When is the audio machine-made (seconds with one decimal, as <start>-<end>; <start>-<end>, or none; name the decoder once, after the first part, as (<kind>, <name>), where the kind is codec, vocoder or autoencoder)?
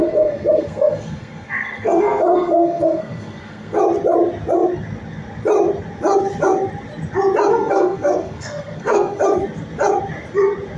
0.0-3.8 (codec, SNAC); 7.5-9.2